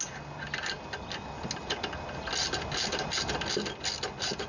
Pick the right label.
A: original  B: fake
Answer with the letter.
A